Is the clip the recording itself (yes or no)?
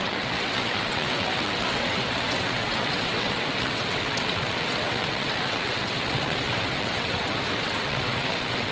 no